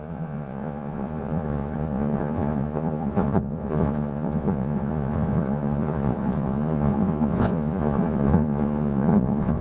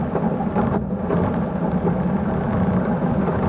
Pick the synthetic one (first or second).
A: first